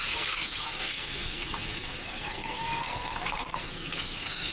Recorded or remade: remade